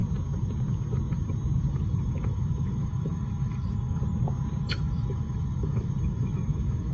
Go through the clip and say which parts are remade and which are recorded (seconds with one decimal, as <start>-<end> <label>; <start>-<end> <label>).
0.0-1.7 recorded; 1.7-4.0 remade; 4.0-4.6 recorded; 4.6-6.9 remade